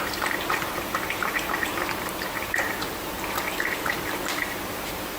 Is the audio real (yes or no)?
no